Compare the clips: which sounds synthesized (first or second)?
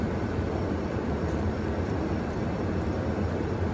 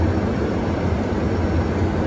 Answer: first